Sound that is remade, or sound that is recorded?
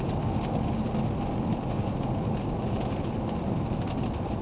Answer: recorded